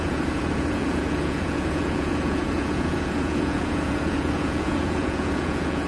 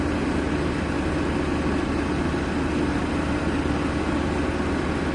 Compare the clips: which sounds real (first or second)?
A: second